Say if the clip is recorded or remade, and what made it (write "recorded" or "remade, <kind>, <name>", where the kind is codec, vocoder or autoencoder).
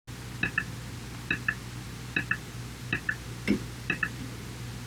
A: recorded